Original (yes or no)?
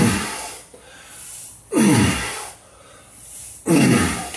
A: yes